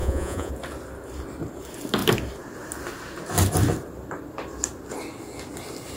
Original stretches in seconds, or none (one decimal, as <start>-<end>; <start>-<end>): 0.5-6.0